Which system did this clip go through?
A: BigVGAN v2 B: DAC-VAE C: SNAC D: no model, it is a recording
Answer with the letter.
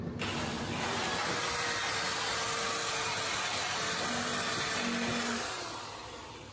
D